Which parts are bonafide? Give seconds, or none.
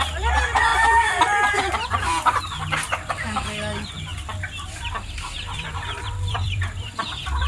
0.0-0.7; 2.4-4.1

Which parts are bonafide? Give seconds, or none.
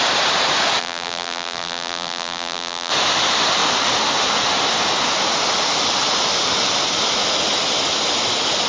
0.0-0.8; 2.9-8.7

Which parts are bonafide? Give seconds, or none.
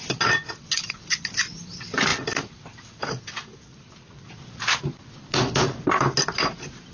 0.0-6.9